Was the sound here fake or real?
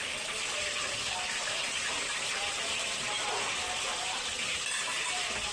real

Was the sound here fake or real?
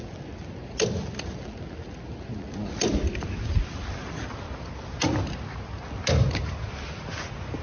real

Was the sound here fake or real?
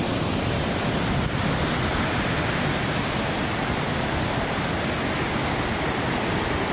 real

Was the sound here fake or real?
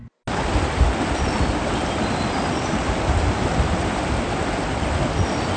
real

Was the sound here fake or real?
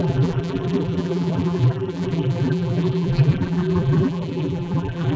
fake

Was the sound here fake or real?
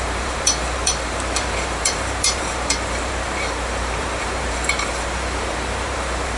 fake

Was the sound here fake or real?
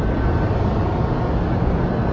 real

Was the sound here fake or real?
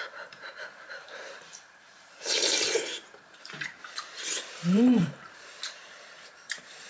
fake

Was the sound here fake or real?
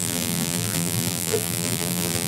fake